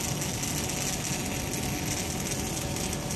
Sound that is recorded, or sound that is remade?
recorded